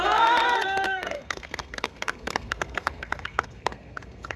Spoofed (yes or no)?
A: yes